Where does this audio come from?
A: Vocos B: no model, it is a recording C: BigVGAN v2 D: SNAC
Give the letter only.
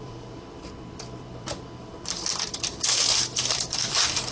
C